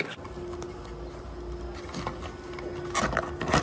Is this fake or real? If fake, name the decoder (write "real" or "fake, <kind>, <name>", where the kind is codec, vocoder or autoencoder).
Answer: real